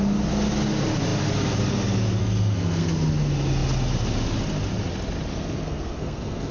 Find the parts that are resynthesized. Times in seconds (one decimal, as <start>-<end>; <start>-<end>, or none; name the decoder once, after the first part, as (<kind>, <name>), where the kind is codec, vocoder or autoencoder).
2.2-2.9 (codec, SNAC); 5.3-6.5